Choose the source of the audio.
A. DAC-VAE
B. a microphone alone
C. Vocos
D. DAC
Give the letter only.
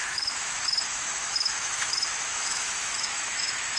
A